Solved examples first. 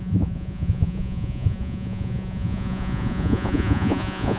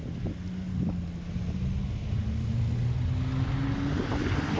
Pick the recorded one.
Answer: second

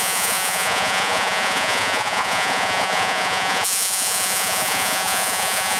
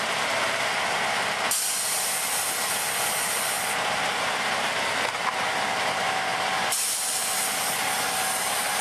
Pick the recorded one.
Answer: second